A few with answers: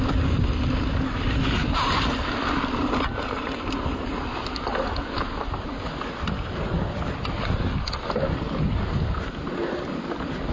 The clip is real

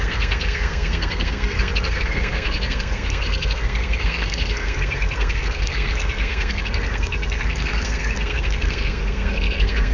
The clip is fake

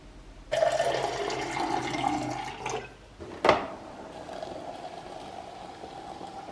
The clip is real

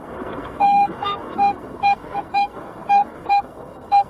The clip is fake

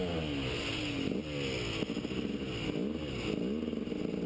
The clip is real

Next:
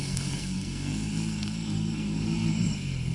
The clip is fake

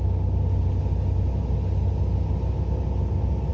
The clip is real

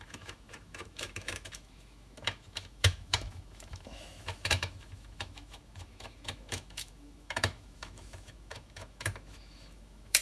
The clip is fake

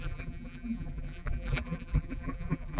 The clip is fake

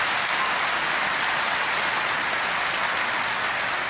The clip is real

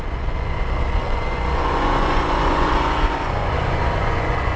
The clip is fake